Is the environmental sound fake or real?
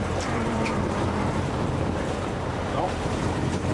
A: fake